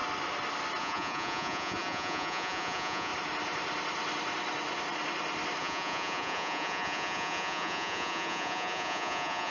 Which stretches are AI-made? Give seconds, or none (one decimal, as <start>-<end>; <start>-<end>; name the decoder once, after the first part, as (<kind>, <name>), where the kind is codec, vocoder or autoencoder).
0.8-3.1 (vocoder, Vocos); 5.6-9.5